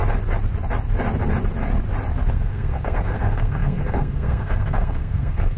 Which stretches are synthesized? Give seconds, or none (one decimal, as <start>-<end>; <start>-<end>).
2.3-5.6